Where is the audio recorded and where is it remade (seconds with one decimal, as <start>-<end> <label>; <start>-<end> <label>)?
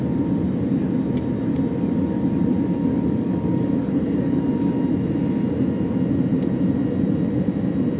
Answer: 0.0-2.8 recorded; 2.8-4.4 remade; 4.4-8.0 recorded